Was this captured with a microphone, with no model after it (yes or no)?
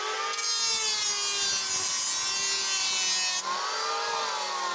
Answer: yes